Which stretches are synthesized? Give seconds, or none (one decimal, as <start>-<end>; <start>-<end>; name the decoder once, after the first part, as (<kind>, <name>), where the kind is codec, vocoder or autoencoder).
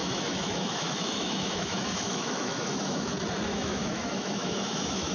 0.0-3.1 (autoencoder, DAC-VAE); 3.5-5.1